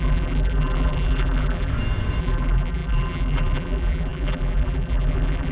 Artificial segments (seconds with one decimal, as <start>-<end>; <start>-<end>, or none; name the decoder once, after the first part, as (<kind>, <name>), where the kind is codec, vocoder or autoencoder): 0.0-1.7 (vocoder, BigVGAN v2); 2.2-5.5